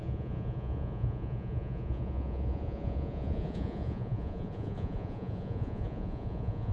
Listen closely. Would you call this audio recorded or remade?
remade